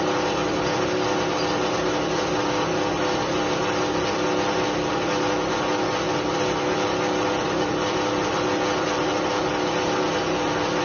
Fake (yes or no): no